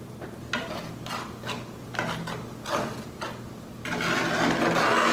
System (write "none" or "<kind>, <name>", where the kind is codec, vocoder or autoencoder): none